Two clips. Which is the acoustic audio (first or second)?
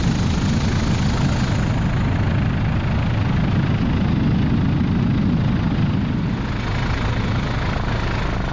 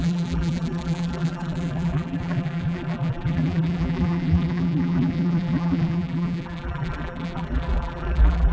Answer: first